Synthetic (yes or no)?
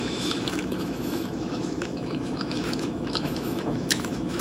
yes